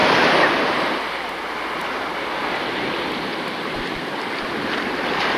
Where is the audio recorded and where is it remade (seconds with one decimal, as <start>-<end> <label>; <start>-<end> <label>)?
0.0-3.3 recorded; 3.3-4.5 remade; 4.5-5.4 recorded